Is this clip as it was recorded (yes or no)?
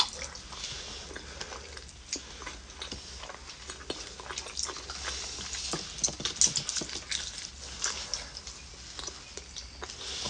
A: yes